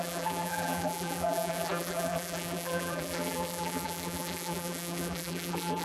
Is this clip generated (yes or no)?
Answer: yes